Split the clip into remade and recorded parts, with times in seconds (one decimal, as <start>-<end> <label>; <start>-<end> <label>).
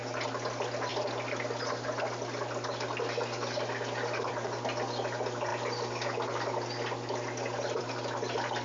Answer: 0.0-8.6 recorded